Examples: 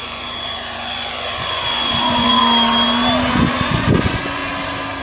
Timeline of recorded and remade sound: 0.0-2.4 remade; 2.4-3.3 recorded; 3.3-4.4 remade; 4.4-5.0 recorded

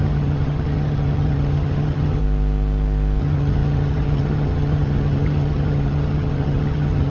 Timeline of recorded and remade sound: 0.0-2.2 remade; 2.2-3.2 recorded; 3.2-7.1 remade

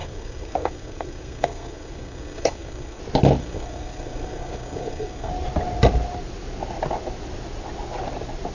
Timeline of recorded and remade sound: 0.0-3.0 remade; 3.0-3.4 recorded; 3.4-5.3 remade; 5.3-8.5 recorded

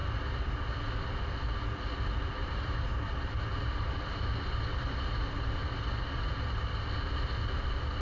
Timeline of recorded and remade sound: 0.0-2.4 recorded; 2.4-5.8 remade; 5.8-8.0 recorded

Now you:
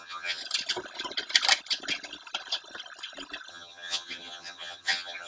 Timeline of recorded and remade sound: 0.0-0.4 remade; 0.4-3.5 recorded; 3.5-5.3 remade

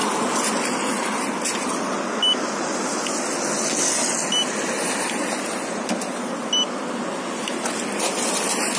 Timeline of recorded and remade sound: 0.0-8.8 recorded

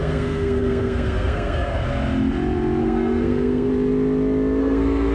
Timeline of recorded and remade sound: 0.0-1.8 remade; 1.8-2.8 recorded; 2.8-3.7 remade; 3.7-4.6 recorded; 4.6-5.1 remade